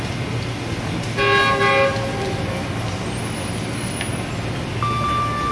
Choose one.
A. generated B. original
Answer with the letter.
B